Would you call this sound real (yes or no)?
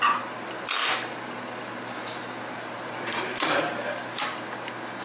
yes